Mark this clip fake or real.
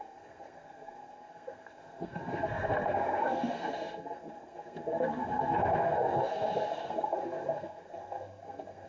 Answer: fake